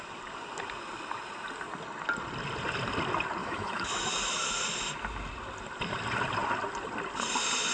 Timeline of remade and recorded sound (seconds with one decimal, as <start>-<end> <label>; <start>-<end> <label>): 0.0-3.4 recorded; 3.4-4.1 remade; 4.1-7.7 recorded